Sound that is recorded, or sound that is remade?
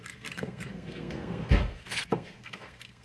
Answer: remade